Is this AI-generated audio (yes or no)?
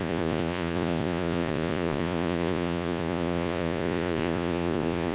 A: yes